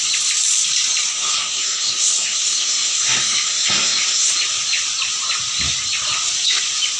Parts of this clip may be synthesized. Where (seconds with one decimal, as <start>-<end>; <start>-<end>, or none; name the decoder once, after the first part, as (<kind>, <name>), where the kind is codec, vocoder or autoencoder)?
1.1-4.3 (codec, SNAC)